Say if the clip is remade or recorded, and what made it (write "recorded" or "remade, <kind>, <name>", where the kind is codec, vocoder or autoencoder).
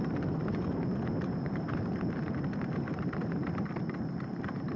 remade, vocoder, BigVGAN v2